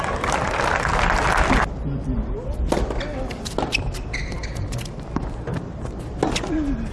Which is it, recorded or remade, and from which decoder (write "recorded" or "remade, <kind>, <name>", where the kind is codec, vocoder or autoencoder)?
recorded